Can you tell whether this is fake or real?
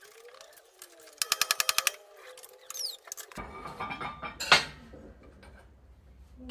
real